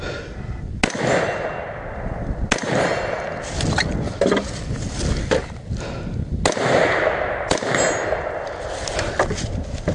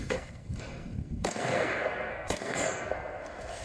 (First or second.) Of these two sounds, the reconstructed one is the second